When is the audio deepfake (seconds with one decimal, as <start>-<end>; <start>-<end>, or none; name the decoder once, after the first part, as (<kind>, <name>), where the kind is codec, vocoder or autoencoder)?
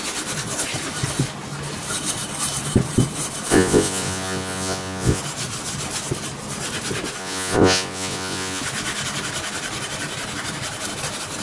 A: 3.5-5.2 (vocoder, Vocos); 7.2-8.6